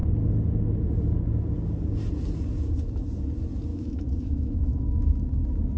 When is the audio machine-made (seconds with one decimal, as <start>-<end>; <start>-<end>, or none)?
3.7-5.3